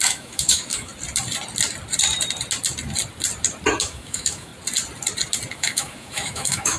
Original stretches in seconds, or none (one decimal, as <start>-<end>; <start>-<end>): 0.9-3.8; 4.5-5.5